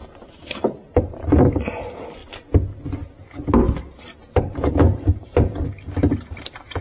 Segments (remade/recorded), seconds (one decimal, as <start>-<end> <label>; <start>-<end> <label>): 0.0-2.2 remade; 2.2-4.0 recorded; 4.0-6.8 remade